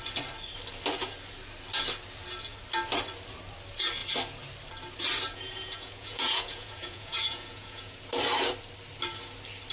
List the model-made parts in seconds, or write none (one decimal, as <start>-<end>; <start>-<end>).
5.3-8.0